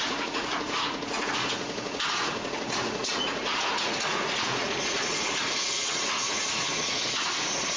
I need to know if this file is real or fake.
fake